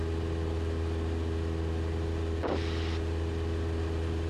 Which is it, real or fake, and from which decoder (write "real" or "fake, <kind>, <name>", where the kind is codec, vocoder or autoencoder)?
fake, vocoder, BigVGAN v2